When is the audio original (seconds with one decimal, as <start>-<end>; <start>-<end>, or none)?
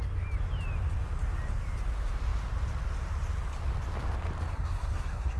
0.0-4.5